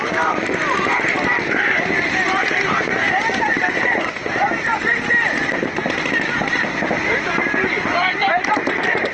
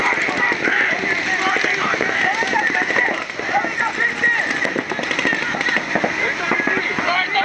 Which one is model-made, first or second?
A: first